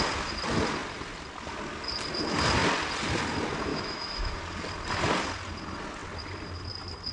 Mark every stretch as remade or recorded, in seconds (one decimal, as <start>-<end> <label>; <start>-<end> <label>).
0.0-3.7 recorded; 3.7-4.3 remade; 4.3-7.1 recorded